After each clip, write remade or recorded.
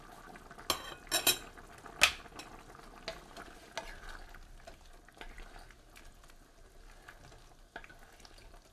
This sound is recorded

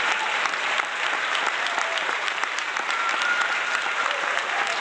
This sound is remade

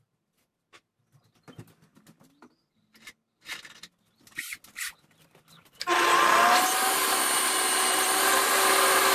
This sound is recorded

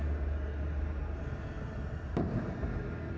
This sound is recorded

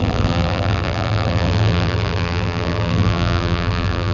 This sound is remade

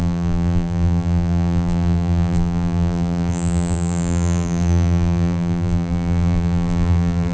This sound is remade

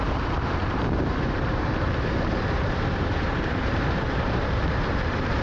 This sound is remade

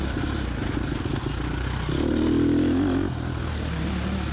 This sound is recorded